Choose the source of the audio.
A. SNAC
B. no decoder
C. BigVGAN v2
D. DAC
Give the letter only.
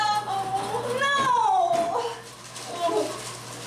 B